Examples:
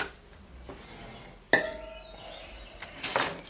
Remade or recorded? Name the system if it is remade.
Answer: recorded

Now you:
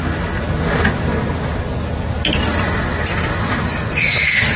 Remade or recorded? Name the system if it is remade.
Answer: recorded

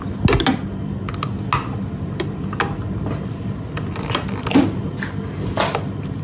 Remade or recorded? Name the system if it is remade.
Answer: recorded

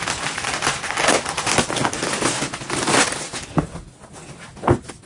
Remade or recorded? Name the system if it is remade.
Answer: recorded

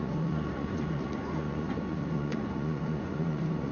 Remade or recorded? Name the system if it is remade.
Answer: remade, vocoder, Vocos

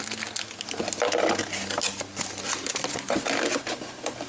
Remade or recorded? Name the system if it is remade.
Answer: recorded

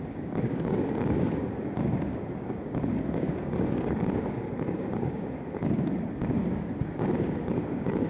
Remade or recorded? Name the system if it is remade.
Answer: remade, codec, DAC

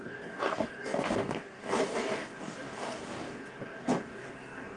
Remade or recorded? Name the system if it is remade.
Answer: remade, codec, DAC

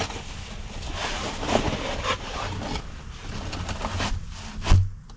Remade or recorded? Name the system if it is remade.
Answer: recorded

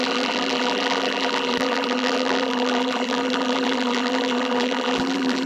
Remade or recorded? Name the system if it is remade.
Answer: remade, vocoder, BigVGAN v2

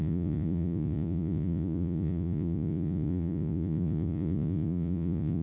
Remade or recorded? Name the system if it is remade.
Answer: remade, vocoder, Vocos